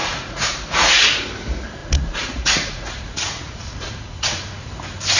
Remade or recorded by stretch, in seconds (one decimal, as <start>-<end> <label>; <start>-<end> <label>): 0.0-1.0 remade; 1.0-1.8 recorded; 1.8-4.7 remade; 4.7-5.2 recorded